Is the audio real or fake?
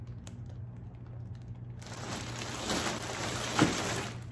real